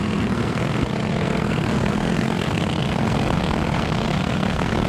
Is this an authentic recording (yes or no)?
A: no